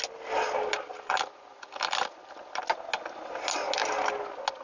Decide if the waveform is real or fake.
real